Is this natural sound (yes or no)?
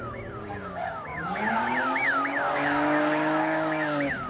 no